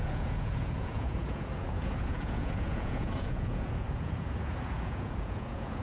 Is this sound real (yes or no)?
no